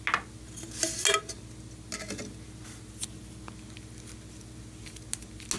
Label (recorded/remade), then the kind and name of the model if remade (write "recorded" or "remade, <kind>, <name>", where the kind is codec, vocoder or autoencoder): recorded